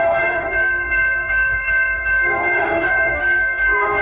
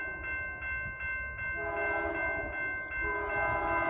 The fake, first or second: first